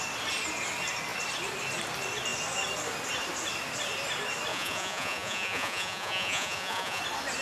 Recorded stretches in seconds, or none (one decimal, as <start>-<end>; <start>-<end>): 0.0-4.5; 7.0-7.4